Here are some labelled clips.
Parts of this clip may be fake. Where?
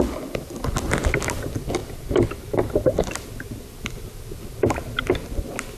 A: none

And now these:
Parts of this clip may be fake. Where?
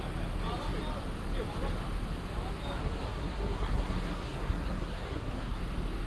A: 2.8-5.6 (codec, SNAC)